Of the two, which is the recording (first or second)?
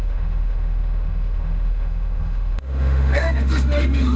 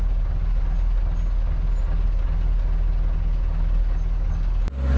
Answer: second